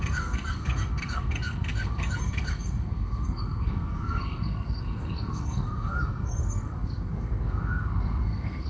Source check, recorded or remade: remade